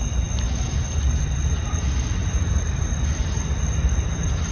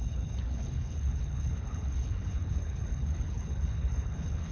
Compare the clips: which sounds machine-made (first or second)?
second